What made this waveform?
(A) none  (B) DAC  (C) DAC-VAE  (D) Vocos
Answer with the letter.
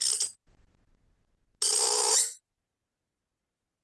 A